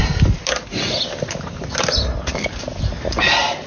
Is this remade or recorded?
recorded